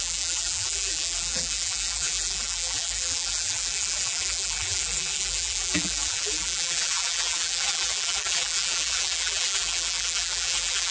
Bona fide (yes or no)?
no